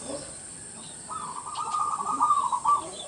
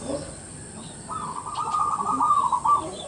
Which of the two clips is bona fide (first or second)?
second